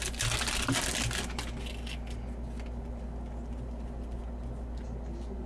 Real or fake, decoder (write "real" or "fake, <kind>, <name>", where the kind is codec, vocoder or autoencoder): real